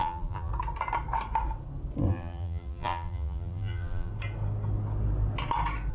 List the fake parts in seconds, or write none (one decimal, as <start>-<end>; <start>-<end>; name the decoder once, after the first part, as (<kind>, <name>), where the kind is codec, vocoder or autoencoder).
0.0-0.5 (vocoder, BigVGAN v2); 2.1-4.1